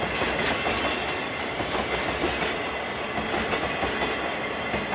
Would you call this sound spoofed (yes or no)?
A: no